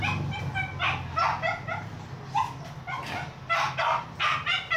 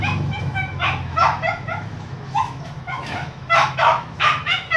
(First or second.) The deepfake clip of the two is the second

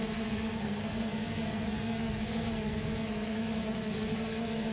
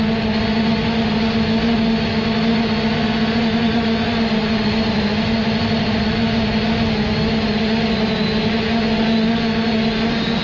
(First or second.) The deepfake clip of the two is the first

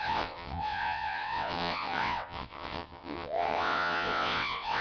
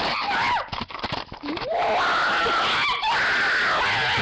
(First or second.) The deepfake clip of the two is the first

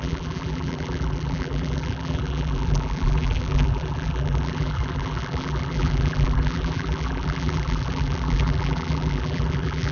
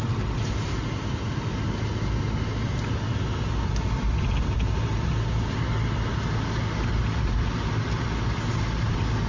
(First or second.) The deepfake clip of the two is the first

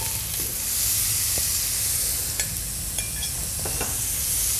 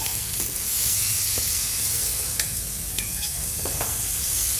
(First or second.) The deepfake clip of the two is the second